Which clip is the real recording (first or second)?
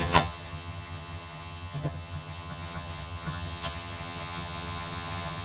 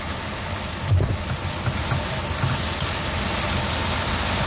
second